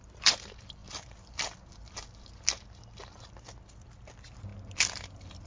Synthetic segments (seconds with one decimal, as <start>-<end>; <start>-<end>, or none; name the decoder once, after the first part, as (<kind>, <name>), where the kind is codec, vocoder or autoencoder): 0.0-0.8 (vocoder, BigVGAN v2); 4.1-4.5